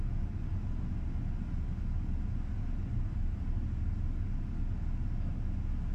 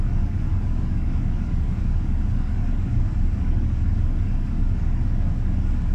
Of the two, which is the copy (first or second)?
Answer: second